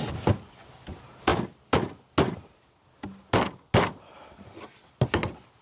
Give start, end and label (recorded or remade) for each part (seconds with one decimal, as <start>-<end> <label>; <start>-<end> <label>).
0.0-5.6 recorded